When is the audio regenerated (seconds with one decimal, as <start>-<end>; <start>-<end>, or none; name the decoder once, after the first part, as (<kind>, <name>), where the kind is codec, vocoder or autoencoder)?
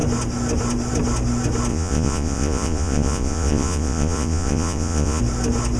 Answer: 1.7-5.2 (vocoder, Vocos)